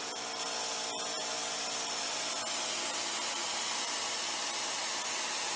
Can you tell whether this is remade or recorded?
recorded